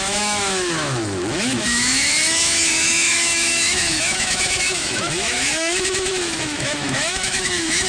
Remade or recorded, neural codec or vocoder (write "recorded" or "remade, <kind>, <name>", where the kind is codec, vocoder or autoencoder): remade, autoencoder, DAC-VAE